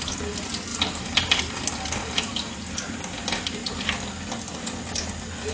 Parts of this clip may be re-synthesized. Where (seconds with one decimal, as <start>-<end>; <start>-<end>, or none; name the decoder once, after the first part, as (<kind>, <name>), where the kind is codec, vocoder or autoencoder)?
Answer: 0.7-1.4 (vocoder, BigVGAN v2); 2.0-3.9